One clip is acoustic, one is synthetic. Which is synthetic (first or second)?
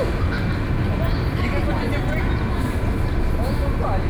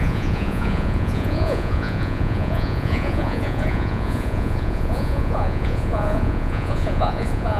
second